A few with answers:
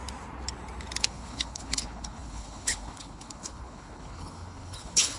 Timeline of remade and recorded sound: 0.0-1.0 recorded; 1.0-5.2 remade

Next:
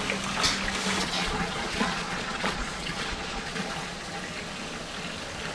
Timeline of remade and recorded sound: 0.0-1.0 recorded; 1.0-4.1 remade; 4.1-5.5 recorded